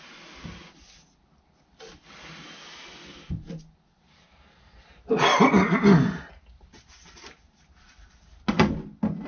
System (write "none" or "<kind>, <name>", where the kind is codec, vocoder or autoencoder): none